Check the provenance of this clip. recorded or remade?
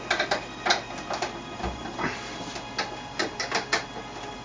recorded